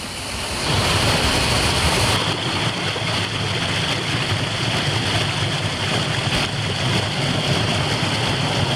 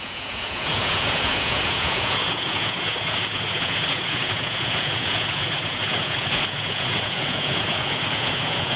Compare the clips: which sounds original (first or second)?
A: first